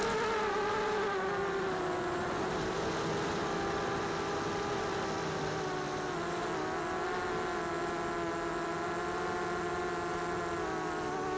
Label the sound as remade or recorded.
recorded